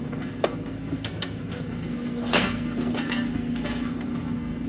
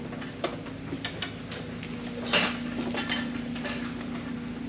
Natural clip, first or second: second